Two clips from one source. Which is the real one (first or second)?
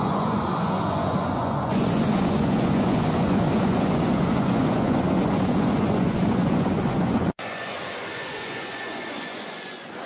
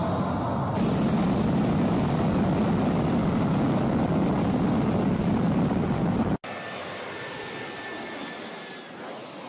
second